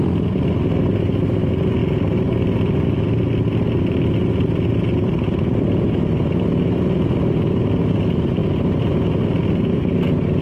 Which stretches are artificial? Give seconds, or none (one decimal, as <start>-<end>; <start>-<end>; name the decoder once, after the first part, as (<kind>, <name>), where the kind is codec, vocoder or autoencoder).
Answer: none